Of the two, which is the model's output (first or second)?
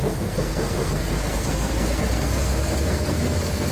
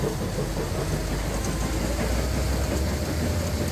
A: first